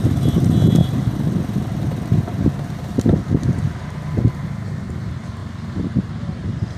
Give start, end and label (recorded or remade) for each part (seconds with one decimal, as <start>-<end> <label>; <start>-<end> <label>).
0.0-6.8 recorded